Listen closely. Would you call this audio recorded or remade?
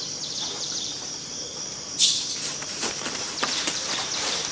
remade